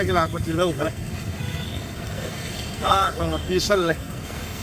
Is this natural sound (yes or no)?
no